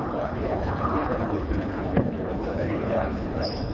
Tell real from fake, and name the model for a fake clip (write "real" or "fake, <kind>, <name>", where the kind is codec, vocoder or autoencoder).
fake, codec, HILCodec